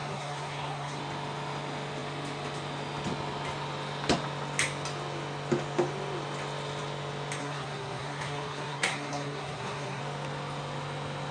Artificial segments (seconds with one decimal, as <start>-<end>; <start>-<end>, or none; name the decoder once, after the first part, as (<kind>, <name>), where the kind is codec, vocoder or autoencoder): 0.0-1.0 (codec, SNAC); 7.4-10.0